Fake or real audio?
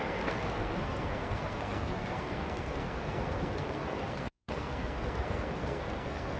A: fake